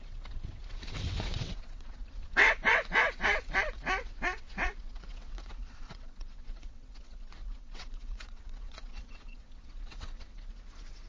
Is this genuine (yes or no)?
no